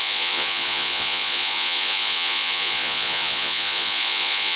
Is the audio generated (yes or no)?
yes